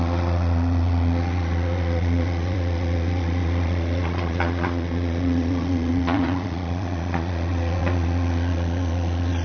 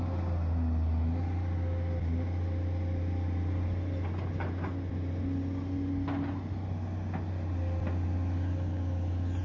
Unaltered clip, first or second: second